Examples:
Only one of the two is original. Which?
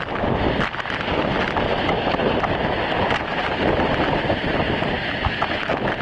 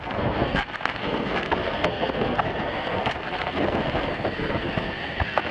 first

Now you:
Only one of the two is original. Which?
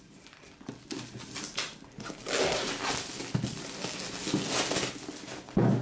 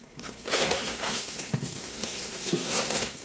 first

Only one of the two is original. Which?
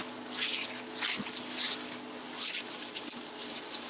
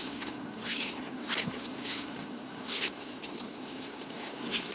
first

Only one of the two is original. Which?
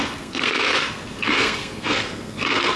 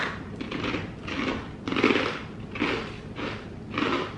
second